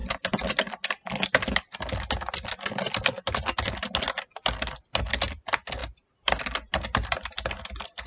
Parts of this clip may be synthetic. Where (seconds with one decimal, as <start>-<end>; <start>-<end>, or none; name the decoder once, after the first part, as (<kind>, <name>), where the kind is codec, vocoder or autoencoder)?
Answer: none